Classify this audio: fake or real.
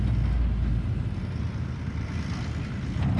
real